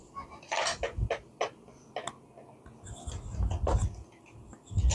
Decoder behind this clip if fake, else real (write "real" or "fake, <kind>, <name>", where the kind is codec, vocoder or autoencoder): real